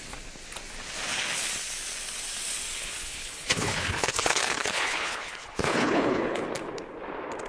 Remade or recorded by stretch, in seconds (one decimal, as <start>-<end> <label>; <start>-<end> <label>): 0.0-2.8 recorded; 2.8-6.4 remade; 6.4-7.5 recorded